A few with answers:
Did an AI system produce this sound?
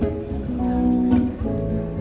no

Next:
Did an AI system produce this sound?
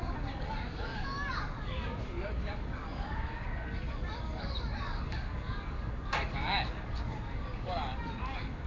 yes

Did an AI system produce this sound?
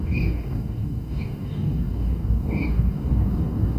yes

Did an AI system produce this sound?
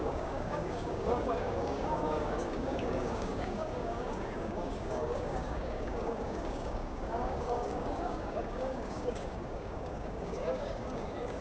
yes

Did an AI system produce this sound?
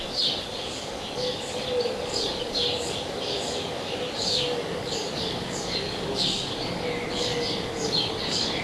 yes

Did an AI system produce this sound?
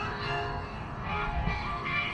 yes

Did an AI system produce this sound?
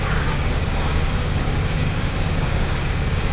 yes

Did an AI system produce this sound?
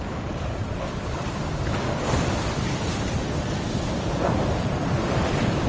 no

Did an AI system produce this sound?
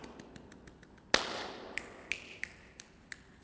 no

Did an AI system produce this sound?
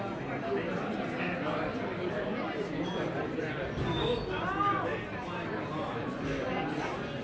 no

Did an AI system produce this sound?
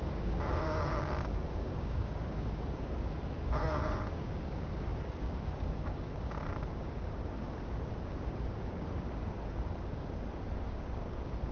yes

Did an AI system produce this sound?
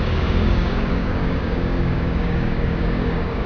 yes